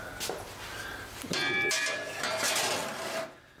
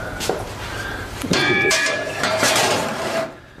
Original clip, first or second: first